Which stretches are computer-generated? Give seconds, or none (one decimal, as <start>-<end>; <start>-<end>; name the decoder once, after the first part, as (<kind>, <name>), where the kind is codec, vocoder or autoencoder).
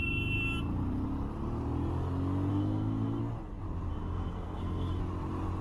2.5-3.2 (codec, SNAC); 3.9-5.0